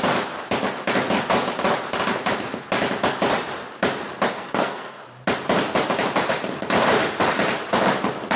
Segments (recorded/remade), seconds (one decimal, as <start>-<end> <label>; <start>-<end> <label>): 0.0-4.3 recorded; 4.3-5.0 remade; 5.0-8.4 recorded